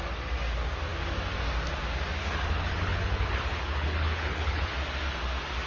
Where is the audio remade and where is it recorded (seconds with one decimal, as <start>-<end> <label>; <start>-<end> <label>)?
0.0-2.2 recorded; 2.2-4.7 remade; 4.7-5.7 recorded